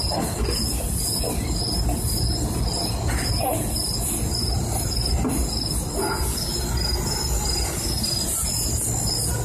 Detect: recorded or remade recorded